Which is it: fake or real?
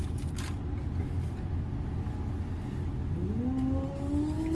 real